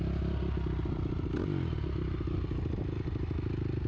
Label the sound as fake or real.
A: real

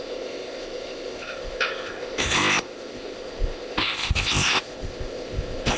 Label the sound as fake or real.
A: fake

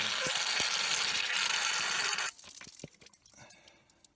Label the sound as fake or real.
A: real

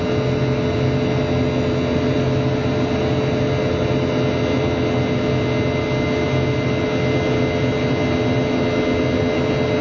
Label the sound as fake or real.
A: real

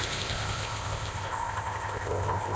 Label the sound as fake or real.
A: fake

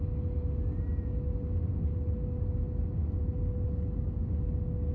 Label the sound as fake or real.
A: real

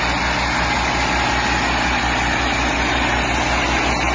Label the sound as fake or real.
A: real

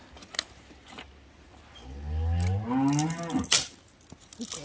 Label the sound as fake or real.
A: real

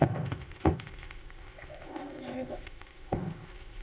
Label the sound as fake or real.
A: fake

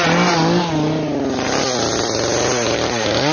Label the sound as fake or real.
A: real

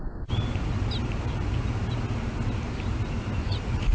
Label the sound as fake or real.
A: real